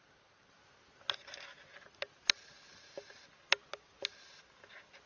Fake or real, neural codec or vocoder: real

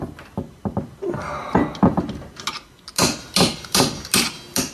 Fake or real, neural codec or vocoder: real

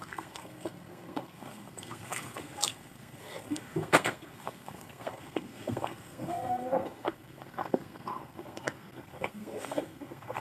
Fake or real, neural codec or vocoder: fake, codec, SNAC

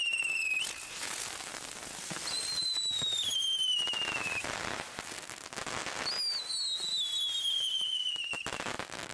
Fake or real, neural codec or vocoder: real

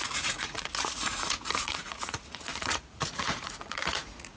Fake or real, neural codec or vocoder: fake, vocoder, Vocos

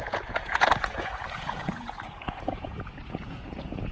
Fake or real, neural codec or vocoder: fake, vocoder, Vocos